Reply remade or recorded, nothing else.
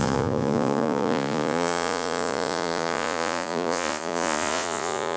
remade